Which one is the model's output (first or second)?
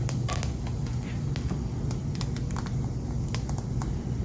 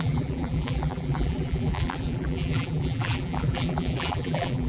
second